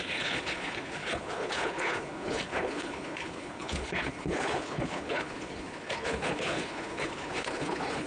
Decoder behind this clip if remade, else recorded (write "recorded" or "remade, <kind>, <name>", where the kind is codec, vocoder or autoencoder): remade, codec, HILCodec